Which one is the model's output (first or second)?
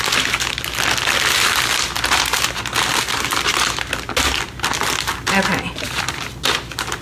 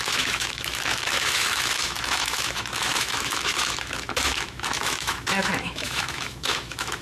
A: second